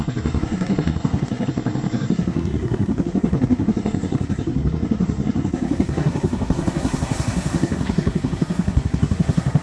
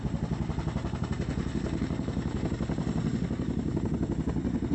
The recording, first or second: second